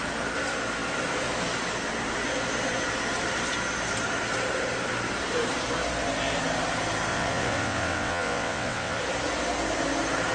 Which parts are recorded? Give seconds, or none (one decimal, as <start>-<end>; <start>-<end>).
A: 0.0-7.1; 9.0-10.3